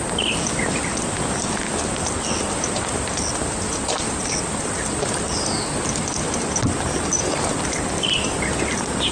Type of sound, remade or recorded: recorded